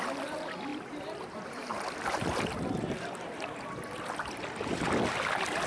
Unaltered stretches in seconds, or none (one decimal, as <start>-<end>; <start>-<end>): 0.0-0.7; 4.1-5.7